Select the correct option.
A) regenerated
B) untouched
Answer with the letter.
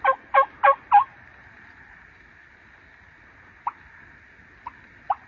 B